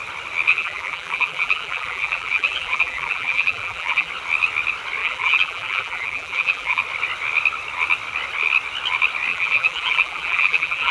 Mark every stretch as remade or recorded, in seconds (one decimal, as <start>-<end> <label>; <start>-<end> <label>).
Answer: 0.0-0.5 recorded; 0.5-4.1 remade; 4.1-5.0 recorded; 5.0-6.8 remade; 6.8-9.3 recorded; 9.3-10.9 remade